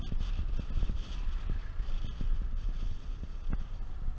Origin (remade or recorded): recorded